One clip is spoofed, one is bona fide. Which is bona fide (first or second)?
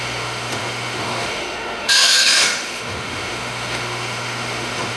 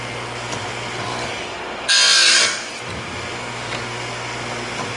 second